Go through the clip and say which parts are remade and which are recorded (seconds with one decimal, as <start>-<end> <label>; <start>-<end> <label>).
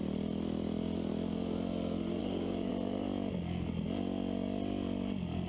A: 0.0-2.2 recorded; 2.2-2.7 remade; 2.7-5.5 recorded